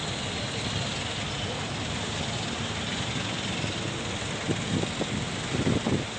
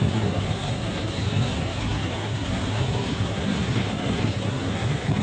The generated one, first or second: second